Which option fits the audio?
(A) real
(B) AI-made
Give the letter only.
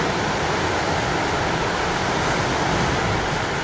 A